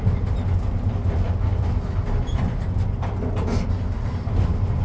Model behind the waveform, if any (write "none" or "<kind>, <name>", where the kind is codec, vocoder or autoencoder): none